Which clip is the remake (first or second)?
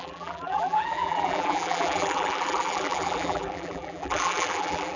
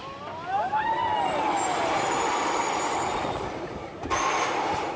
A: first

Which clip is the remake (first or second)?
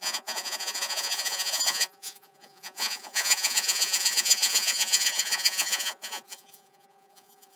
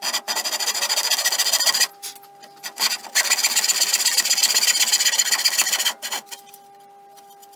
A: first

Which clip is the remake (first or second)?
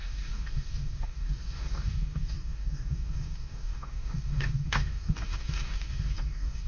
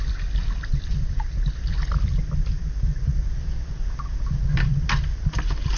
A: first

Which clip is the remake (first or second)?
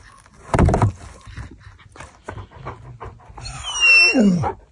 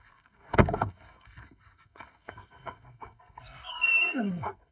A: second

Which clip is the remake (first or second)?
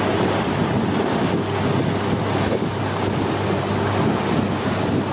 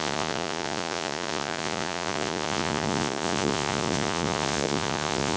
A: second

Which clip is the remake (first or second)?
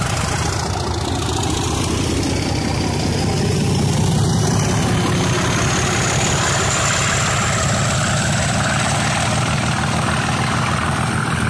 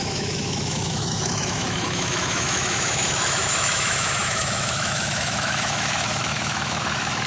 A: second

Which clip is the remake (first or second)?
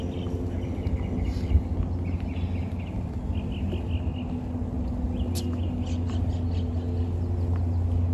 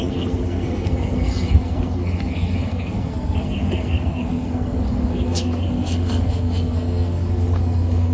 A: second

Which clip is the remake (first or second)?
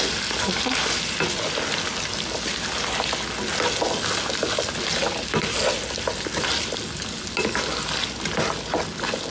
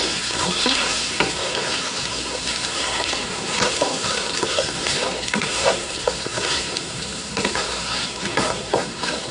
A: second